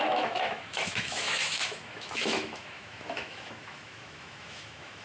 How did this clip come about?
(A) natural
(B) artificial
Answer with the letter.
B